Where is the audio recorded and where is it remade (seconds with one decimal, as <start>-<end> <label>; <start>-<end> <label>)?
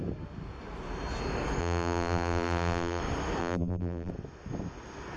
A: 0.0-1.6 recorded; 1.6-3.0 remade; 3.0-3.4 recorded; 3.4-4.1 remade; 4.1-5.2 recorded